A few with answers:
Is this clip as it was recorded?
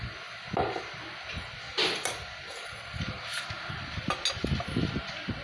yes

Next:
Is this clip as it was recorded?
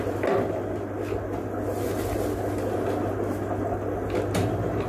yes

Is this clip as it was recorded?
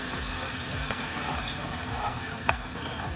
no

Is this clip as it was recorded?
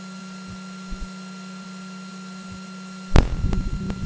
yes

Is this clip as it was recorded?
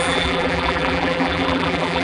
no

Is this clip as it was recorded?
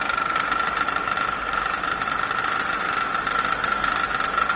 yes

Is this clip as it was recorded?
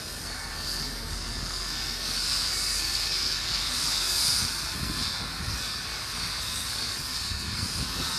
no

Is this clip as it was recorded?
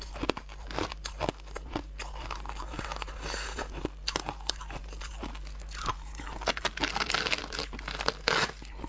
yes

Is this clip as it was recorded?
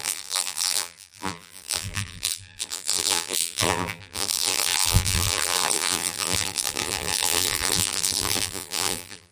no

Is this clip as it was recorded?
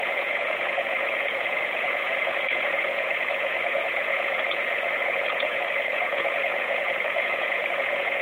no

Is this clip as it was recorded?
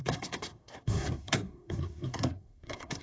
no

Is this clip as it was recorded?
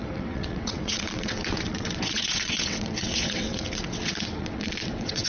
no